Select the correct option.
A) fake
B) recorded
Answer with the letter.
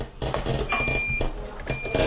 B